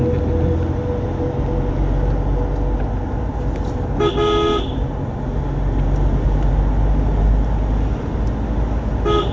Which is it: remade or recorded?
recorded